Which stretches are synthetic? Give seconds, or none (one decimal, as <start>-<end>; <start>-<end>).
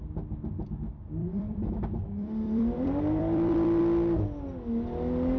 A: 1.2-3.8